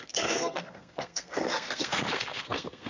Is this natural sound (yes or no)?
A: no